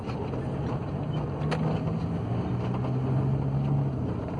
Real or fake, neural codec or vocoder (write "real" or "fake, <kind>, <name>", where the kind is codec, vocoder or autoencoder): real